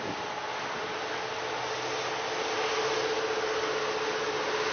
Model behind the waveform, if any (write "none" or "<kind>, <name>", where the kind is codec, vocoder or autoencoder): none